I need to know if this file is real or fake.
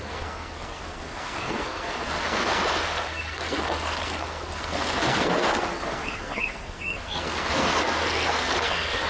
fake